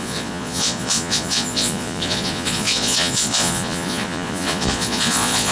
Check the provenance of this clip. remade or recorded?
remade